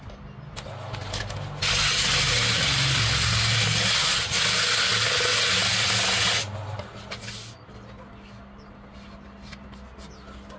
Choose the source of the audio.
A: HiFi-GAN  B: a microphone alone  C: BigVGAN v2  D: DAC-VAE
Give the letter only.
B